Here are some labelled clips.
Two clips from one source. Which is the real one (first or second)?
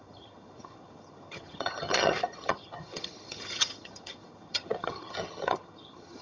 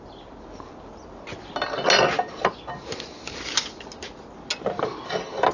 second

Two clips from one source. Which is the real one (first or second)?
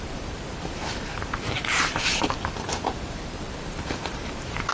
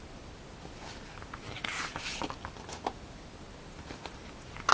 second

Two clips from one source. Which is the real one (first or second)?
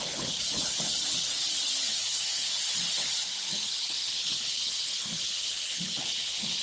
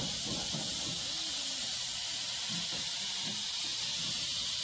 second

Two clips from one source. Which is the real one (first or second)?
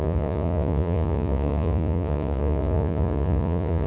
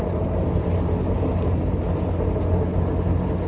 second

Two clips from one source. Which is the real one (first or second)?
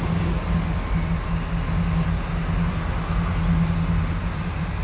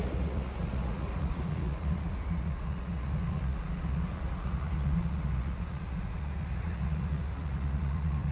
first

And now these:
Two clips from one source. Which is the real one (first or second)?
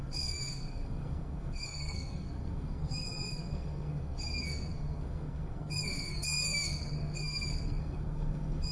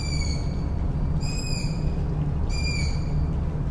second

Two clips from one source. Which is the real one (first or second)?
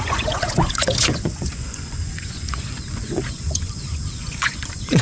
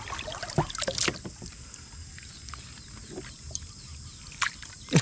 second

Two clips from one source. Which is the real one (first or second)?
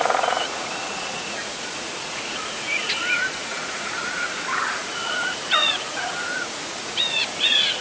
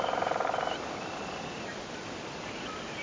second